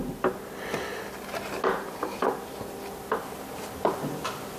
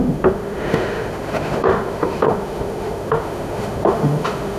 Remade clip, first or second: second